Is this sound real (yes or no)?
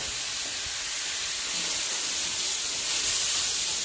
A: yes